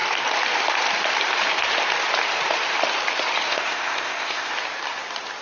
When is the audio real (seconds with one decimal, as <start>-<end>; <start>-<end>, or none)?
0.0-3.5; 4.5-5.4